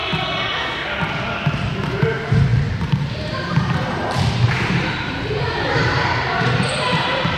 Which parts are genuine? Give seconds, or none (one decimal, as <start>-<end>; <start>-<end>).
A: 0.0-1.6